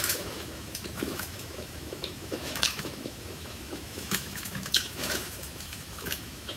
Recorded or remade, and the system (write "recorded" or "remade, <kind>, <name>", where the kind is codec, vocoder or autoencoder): remade, autoencoder, DAC-VAE